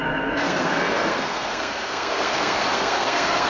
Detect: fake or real fake